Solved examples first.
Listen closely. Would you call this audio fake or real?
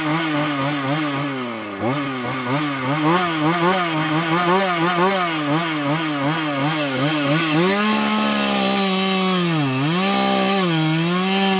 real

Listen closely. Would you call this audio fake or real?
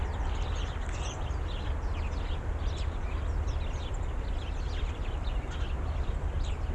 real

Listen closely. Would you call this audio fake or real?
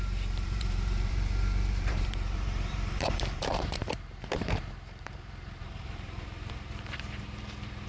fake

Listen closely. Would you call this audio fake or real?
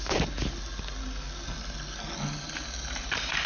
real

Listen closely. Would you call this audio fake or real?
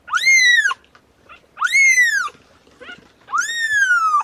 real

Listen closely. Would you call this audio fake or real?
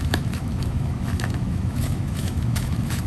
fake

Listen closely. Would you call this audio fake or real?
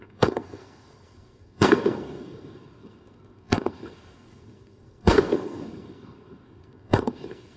fake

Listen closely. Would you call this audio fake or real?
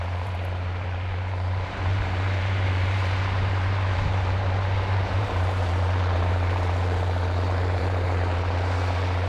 fake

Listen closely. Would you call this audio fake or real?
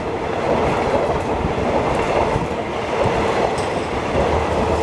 real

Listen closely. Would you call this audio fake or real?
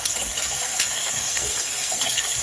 fake